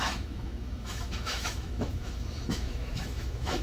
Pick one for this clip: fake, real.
fake